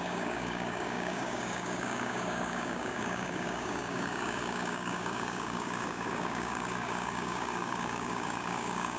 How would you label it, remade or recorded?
remade